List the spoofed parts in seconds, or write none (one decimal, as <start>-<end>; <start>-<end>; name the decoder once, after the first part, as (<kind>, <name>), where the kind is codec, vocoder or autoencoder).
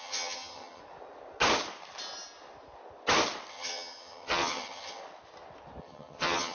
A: 0.0-0.8 (vocoder, HiFi-GAN); 3.5-5.0; 5.8-6.5